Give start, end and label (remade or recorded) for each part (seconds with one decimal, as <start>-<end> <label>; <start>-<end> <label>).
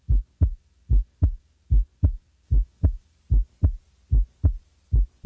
0.0-3.2 remade; 3.2-5.3 recorded